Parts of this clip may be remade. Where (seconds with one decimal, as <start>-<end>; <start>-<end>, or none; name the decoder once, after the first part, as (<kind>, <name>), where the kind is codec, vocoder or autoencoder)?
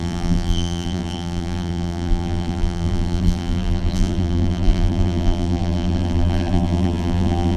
0.0-7.6 (vocoder, BigVGAN v2)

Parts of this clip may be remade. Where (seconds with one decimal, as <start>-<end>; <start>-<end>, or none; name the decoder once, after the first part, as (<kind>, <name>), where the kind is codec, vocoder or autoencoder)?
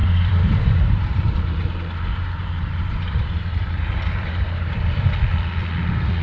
0.0-1.4 (vocoder, BigVGAN v2); 2.1-5.1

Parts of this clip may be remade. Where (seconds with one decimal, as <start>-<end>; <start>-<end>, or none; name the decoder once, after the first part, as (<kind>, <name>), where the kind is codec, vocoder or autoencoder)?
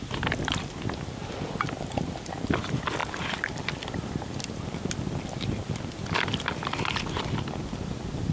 none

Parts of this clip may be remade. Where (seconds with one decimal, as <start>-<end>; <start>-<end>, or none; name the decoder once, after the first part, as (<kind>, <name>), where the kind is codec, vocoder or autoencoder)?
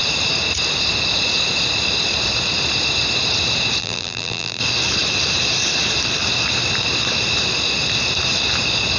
3.8-4.6 (vocoder, BigVGAN v2)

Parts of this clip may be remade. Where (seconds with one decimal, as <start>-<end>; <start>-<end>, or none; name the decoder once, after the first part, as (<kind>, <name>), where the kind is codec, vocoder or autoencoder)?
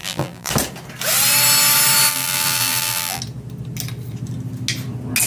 0.0-0.5 (vocoder, BigVGAN v2); 2.1-3.2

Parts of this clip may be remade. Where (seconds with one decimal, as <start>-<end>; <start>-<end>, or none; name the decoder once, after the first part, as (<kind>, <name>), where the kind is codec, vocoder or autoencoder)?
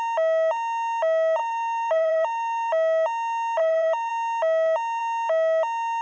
1.4-2.7 (vocoder, BigVGAN v2); 3.6-4.1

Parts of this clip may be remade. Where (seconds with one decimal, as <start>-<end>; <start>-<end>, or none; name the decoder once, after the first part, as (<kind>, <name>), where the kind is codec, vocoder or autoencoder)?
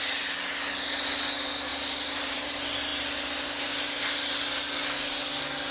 1.7-2.5 (vocoder, BigVGAN v2)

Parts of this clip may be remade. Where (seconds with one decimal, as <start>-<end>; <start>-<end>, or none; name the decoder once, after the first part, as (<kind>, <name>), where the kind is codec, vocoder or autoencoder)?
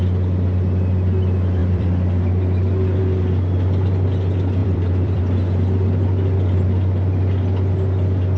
1.6-3.0 (vocoder, BigVGAN v2); 4.6-5.2